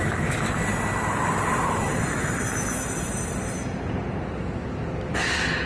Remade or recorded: recorded